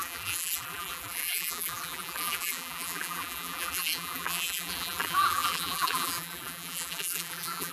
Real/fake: fake